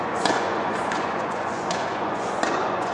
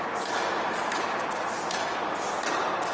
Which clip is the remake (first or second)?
first